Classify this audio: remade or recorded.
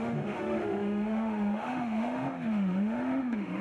remade